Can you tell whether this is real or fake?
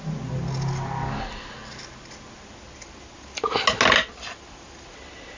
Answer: real